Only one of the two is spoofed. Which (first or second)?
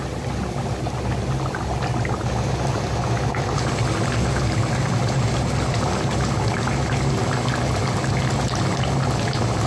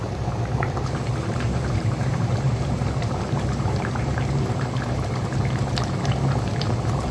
second